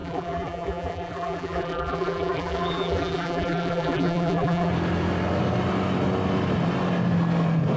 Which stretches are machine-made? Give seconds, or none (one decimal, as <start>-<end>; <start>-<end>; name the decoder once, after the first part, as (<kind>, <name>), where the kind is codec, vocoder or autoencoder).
0.0-4.7 (vocoder, BigVGAN v2)

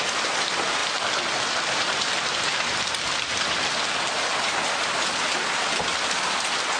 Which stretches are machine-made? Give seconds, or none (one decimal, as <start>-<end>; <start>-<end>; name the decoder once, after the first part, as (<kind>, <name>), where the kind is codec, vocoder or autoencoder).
0.8-4.0 (vocoder, BigVGAN v2)